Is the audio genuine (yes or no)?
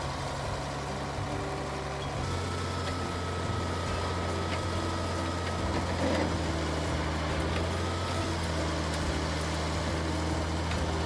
yes